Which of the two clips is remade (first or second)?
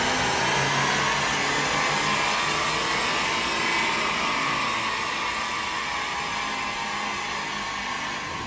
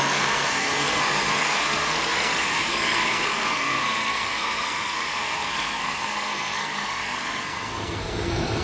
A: second